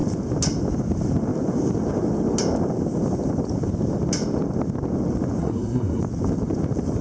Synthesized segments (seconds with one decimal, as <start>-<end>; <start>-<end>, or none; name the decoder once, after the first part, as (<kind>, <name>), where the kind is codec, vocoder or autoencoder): 5.4-6.0 (codec, SNAC)